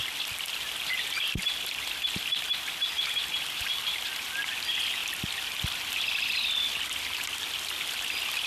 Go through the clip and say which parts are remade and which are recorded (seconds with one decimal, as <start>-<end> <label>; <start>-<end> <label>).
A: 0.0-8.5 recorded